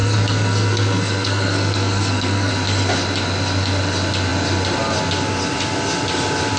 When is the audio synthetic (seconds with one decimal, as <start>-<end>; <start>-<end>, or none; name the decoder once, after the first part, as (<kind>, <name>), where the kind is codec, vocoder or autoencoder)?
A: 0.0-2.5 (codec, SNAC)